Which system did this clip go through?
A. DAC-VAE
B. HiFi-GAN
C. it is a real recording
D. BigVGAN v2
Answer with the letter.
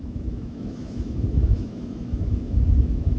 A